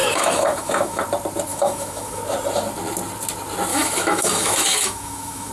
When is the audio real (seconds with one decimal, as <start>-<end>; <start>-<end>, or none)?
1.0-1.5; 2.2-3.7